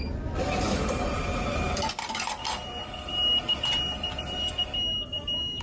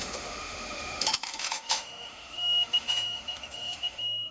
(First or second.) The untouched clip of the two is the first